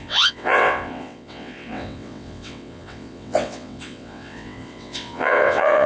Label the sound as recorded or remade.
remade